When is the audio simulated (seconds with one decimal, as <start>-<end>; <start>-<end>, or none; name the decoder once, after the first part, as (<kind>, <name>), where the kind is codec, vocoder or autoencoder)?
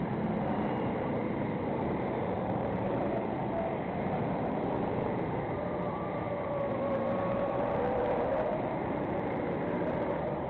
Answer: 0.0-10.5 (vocoder, BigVGAN v2)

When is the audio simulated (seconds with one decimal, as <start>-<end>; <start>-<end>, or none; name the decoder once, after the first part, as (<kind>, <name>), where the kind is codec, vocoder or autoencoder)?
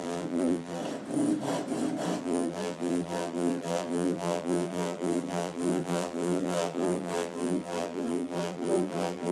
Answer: 0.0-0.8 (vocoder, BigVGAN v2); 2.2-9.3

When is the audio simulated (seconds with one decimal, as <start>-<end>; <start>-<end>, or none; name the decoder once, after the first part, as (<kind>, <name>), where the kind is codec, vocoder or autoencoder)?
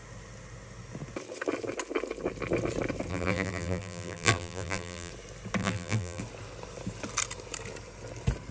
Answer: 3.1-5.1 (vocoder, BigVGAN v2); 5.6-6.2